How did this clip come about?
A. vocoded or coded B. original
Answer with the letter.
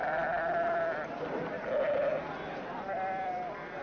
A